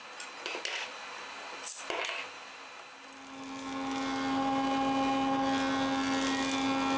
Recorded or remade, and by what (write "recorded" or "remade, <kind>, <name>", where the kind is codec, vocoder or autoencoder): recorded